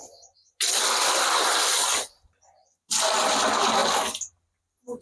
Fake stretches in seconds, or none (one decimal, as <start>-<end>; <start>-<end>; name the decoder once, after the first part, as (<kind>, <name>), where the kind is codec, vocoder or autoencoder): none